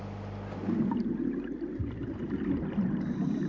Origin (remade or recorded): recorded